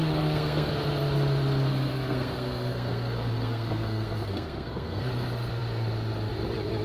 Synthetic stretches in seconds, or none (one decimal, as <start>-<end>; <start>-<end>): 0.0-0.7; 1.7-5.0